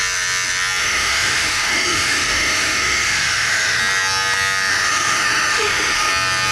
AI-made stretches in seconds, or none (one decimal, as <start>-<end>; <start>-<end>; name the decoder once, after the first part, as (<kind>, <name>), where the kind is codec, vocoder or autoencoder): 0.8-3.8 (autoencoder, DAC-VAE); 4.7-6.1